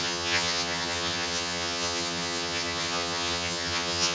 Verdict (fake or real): fake